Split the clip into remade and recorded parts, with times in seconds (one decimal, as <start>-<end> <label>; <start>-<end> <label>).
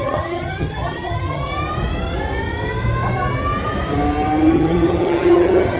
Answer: 0.0-1.5 remade; 1.5-4.5 recorded; 4.5-5.8 remade